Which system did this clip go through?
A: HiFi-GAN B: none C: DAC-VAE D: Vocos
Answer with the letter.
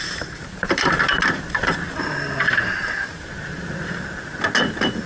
B